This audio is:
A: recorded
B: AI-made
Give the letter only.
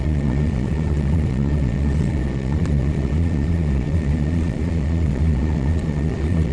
B